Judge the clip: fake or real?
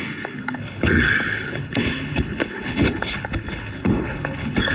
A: fake